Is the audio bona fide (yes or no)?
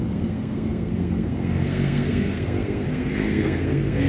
no